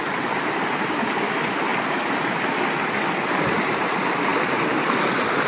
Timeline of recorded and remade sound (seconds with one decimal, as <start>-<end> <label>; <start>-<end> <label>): 0.0-5.5 recorded